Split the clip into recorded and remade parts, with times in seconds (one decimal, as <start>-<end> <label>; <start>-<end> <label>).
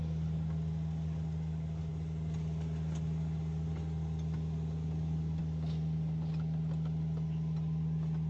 0.0-8.3 recorded